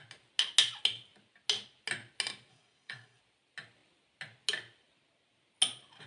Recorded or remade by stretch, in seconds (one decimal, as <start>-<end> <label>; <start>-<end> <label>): 0.0-2.5 recorded; 2.5-3.2 remade; 3.2-6.1 recorded

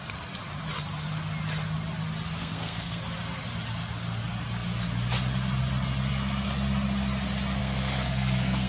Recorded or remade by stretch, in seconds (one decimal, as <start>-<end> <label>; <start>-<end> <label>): 0.0-2.4 recorded; 2.4-3.0 remade; 3.0-7.6 recorded; 7.6-8.7 remade

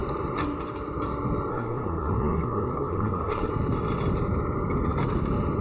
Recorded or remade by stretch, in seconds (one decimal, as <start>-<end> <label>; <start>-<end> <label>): 0.0-1.5 recorded; 1.5-3.5 remade; 3.5-5.6 recorded

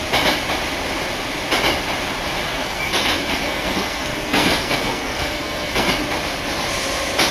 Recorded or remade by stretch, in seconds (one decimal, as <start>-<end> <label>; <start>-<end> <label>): 0.0-2.5 recorded; 2.5-5.9 remade; 5.9-7.3 recorded

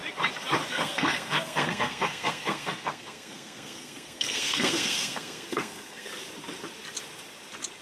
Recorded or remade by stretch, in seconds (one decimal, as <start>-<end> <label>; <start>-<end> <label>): 0.0-0.7 recorded; 0.7-6.1 remade; 6.1-7.8 recorded

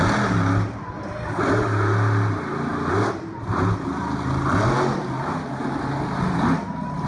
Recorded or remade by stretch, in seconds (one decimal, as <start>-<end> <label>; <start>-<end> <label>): 0.0-7.1 recorded

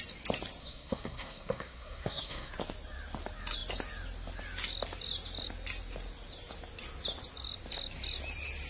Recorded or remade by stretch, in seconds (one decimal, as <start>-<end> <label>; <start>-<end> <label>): 0.0-0.6 recorded; 0.6-2.5 remade; 2.5-8.7 recorded